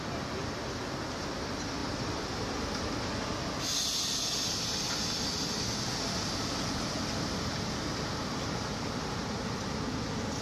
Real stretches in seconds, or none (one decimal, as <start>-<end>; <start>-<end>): 0.0-1.8; 2.4-10.4